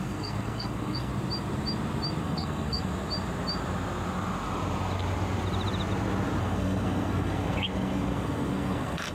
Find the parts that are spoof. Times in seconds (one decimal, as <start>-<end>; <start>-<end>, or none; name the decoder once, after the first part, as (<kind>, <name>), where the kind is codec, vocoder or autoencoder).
0.0-1.1 (codec, SNAC); 2.2-2.9; 6.4-9.1